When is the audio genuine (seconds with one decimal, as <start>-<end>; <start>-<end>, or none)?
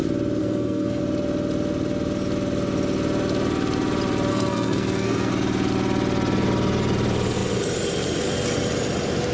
0.0-0.4; 1.0-4.3; 5.3-9.3